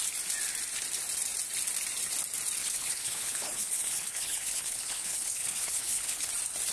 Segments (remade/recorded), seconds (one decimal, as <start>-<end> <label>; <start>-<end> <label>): 0.0-2.6 recorded; 2.6-6.3 remade; 6.3-6.7 recorded